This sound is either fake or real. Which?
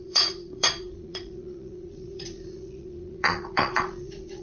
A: fake